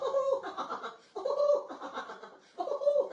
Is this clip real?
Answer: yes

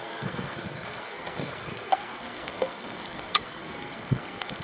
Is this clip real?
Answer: no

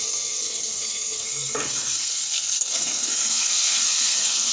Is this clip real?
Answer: no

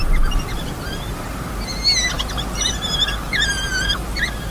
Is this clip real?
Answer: yes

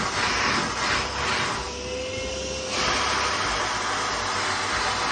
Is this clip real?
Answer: yes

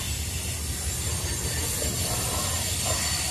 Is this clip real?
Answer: yes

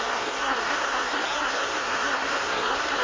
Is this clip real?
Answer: no